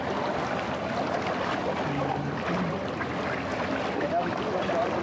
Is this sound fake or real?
real